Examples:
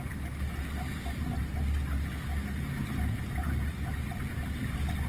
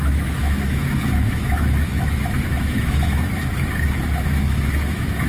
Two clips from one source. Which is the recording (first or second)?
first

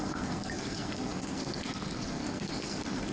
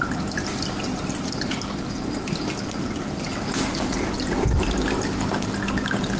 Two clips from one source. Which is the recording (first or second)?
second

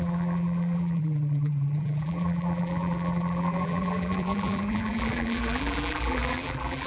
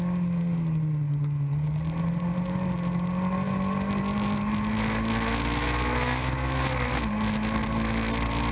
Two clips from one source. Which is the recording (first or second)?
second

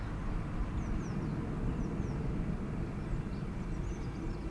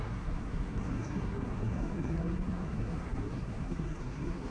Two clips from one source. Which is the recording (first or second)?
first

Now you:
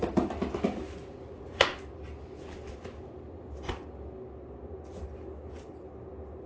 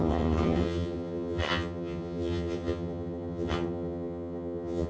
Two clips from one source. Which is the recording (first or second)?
first